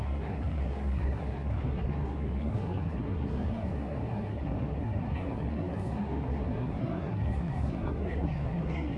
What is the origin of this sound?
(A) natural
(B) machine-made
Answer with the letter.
B